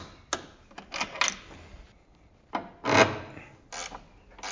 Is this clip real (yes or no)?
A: yes